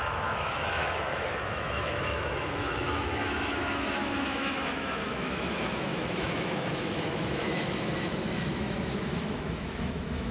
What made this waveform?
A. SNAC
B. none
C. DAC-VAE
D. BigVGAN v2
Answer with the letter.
C